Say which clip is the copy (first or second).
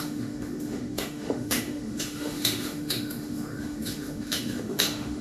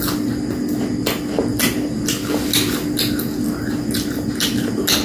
first